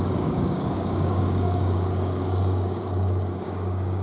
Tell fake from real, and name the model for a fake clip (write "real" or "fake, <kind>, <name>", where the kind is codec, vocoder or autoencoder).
fake, codec, DAC